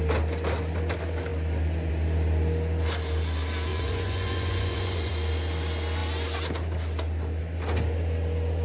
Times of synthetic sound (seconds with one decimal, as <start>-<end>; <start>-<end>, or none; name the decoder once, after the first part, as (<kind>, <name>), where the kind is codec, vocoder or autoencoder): 3.7-5.1 (vocoder, Vocos)